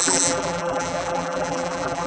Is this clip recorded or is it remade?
remade